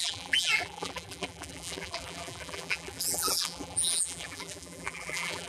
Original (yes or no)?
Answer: no